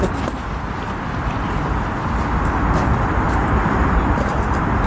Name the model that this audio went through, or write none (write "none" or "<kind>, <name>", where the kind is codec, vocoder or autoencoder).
vocoder, BigVGAN v2